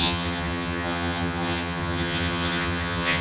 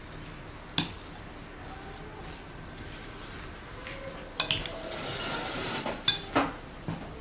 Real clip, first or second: second